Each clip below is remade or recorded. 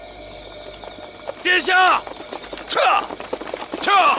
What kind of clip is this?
recorded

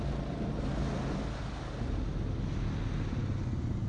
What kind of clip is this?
recorded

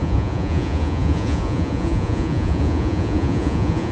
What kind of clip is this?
remade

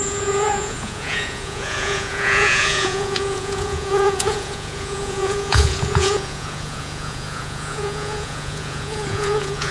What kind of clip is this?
remade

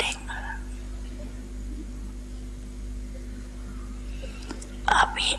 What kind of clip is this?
recorded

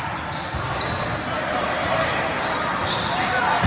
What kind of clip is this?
recorded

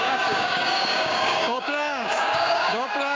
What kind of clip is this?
remade